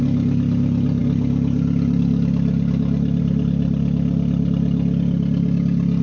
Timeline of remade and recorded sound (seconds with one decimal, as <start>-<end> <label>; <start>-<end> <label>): 0.0-6.0 recorded